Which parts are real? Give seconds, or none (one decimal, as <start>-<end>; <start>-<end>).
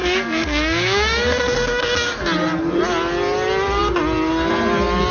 2.2-5.1